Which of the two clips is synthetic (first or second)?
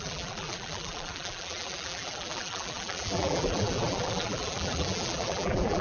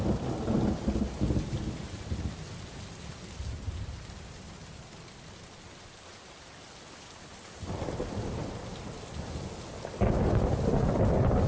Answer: first